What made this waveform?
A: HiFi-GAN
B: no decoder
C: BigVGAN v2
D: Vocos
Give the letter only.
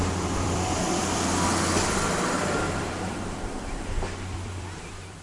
C